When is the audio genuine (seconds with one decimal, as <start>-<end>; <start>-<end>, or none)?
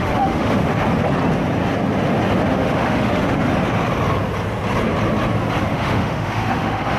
0.7-2.5; 3.5-5.7